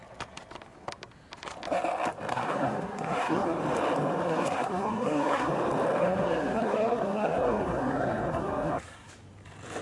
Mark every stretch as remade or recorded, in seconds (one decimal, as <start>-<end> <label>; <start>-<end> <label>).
0.0-2.3 recorded; 2.3-3.6 remade; 3.6-4.2 recorded; 4.2-5.5 remade; 5.5-6.0 recorded; 6.0-9.1 remade; 9.1-9.8 recorded